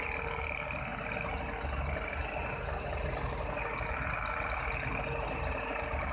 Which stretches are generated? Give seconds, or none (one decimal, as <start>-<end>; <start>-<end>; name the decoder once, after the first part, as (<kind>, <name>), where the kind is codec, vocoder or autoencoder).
none